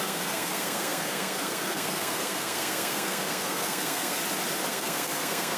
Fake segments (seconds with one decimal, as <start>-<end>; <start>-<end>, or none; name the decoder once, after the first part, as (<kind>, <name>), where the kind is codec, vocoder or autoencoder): 0.0-4.2 (codec, SNAC); 4.7-5.6